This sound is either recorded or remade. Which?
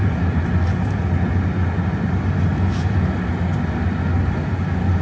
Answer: recorded